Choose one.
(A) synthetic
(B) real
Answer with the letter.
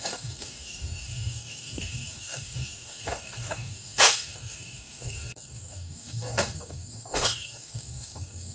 A